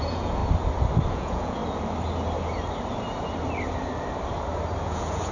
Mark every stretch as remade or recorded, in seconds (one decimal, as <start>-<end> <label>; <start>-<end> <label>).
0.0-0.4 remade; 0.4-1.1 recorded; 1.1-1.6 remade; 1.6-4.8 recorded; 4.8-5.3 remade